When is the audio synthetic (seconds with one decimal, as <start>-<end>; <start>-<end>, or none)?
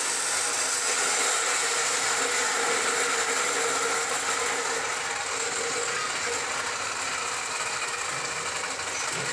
0.5-1.2